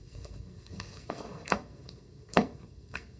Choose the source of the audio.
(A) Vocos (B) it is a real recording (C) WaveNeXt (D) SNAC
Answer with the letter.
D